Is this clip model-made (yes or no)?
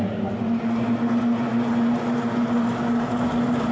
no